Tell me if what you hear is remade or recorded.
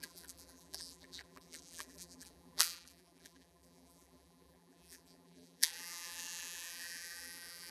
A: remade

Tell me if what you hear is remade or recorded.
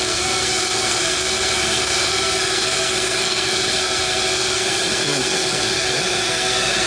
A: remade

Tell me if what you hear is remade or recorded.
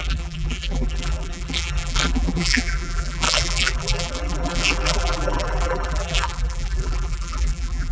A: remade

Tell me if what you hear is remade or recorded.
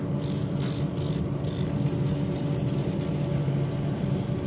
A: recorded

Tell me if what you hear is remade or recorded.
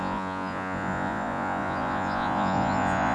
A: remade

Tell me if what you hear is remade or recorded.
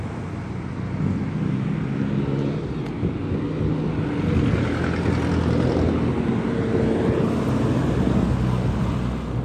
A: recorded